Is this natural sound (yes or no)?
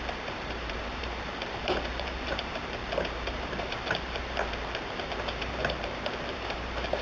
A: no